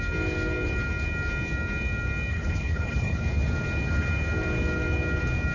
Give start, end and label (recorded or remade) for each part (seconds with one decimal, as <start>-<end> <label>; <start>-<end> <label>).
0.0-2.3 recorded; 2.3-3.2 remade; 3.2-5.5 recorded